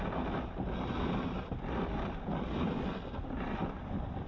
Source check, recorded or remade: recorded